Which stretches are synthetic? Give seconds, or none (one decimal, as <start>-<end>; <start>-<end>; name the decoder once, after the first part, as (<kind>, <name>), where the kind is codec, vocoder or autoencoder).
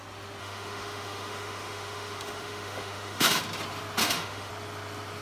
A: 0.4-3.4 (autoencoder, DAC-VAE); 4.0-4.5